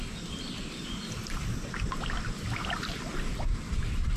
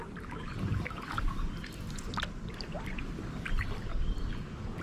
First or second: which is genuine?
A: second